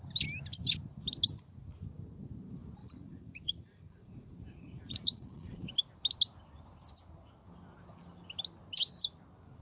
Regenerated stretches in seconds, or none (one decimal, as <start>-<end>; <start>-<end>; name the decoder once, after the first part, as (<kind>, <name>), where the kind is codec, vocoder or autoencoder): 2.8-5.7 (vocoder, Vocos)